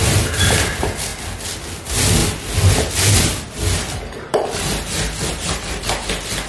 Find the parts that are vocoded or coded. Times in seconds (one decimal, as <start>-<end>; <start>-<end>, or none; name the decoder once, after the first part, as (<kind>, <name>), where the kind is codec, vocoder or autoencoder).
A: none